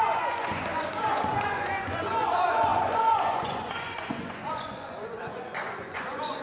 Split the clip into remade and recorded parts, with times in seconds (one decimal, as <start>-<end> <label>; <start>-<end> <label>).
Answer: 0.0-6.4 remade